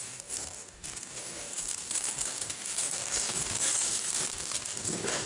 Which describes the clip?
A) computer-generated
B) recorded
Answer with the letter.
A